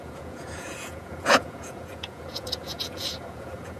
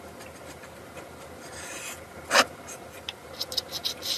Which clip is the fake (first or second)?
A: first